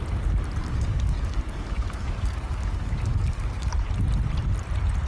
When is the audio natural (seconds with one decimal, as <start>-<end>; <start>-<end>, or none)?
0.0-0.6; 3.7-5.1